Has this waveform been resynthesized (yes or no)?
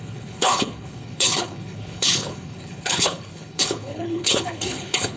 yes